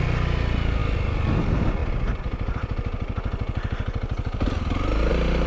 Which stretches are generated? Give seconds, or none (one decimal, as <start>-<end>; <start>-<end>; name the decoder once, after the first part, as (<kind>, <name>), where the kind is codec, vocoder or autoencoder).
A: none